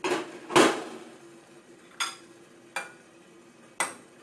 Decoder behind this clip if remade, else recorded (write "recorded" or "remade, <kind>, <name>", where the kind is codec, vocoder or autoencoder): recorded